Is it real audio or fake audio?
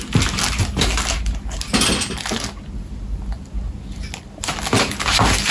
real